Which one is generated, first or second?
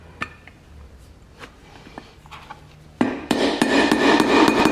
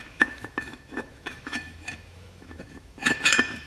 second